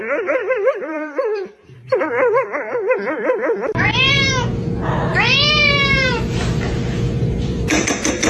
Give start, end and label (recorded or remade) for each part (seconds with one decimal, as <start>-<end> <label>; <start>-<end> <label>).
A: 0.0-0.4 recorded; 0.4-4.3 remade; 4.3-5.1 recorded; 5.1-7.9 remade; 7.9-8.3 recorded